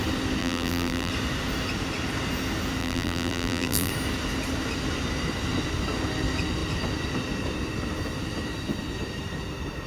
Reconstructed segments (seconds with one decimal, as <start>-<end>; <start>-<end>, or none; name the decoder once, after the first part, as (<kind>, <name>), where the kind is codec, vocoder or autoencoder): 0.4-1.1 (vocoder, BigVGAN v2); 2.8-3.9